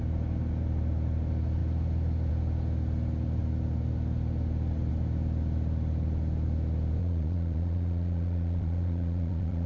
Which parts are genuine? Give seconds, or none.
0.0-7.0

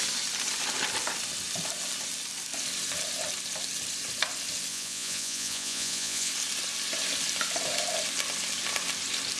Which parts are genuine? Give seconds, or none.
0.0-4.7; 6.3-9.4